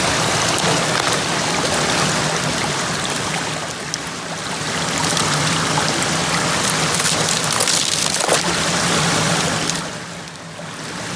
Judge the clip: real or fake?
real